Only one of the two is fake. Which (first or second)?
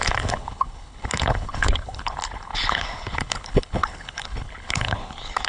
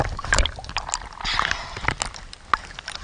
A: first